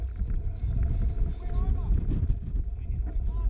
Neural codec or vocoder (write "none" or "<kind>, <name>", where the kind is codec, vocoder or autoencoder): none